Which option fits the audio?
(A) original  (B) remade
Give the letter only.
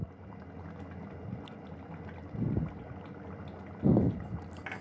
A